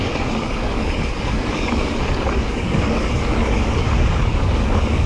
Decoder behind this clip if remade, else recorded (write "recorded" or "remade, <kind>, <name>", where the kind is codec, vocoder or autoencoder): remade, codec, DAC